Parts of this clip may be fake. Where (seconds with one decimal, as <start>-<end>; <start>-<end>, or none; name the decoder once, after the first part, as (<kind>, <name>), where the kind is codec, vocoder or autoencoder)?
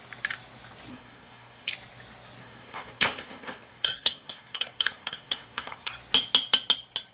0.9-1.7 (codec, SNAC); 2.4-5.9